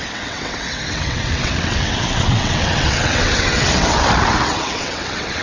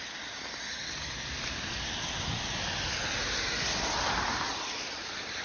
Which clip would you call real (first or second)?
second